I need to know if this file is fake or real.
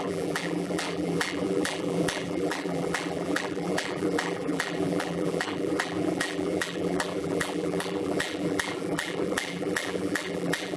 fake